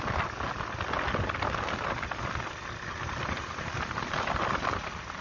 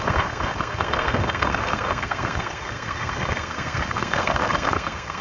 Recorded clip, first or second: first